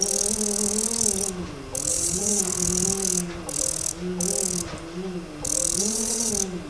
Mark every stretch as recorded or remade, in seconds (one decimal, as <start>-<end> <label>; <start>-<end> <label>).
0.0-1.9 recorded; 1.9-2.4 remade; 2.4-5.8 recorded; 5.8-6.3 remade; 6.3-6.7 recorded